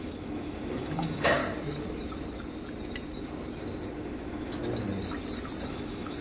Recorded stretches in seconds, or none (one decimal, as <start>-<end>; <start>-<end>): 1.4-4.0; 4.6-5.7